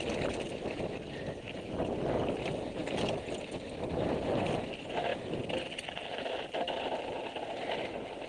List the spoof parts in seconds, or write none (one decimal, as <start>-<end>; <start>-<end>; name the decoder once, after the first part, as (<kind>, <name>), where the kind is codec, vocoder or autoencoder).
none